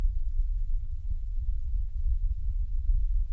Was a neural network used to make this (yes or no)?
yes